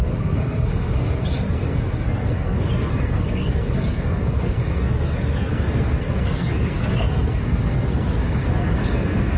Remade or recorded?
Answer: remade